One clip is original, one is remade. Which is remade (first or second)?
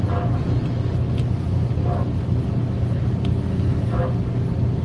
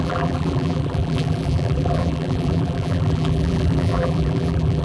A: second